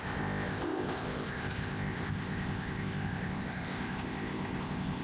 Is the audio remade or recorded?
remade